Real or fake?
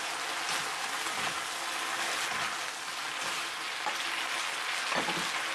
real